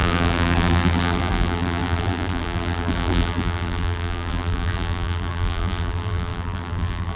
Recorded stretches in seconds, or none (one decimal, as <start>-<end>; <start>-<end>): none